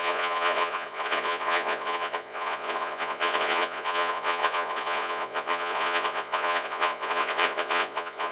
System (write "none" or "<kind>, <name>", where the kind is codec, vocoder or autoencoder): vocoder, Vocos